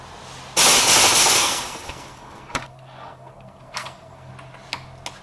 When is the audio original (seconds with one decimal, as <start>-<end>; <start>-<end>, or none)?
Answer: 0.0-1.2; 4.3-5.2